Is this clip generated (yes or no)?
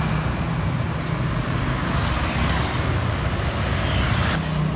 no